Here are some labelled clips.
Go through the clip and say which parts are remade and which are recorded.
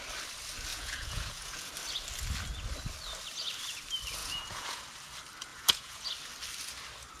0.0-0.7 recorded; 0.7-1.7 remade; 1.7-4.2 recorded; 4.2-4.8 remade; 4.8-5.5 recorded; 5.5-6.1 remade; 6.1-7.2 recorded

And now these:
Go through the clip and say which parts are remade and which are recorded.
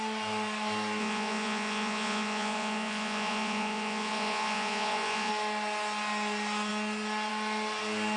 0.0-1.0 recorded; 1.0-5.3 remade; 5.3-8.2 recorded